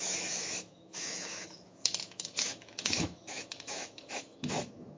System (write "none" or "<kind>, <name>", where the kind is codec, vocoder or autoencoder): autoencoder, DAC-VAE